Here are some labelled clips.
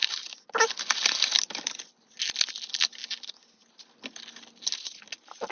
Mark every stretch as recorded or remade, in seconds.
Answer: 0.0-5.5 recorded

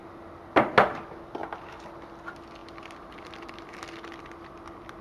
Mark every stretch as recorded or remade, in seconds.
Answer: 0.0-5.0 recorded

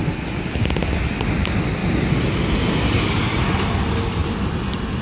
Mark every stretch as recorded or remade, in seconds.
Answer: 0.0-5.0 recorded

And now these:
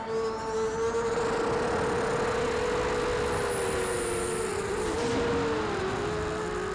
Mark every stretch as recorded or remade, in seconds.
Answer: 0.0-4.5 recorded; 4.5-5.1 remade; 5.1-6.7 recorded